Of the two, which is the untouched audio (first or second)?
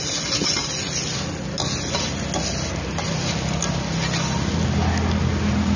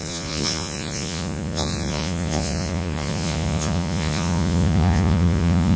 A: first